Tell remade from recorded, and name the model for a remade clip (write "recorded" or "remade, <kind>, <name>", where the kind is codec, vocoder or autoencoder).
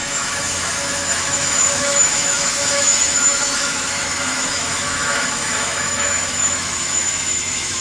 remade, autoencoder, DAC-VAE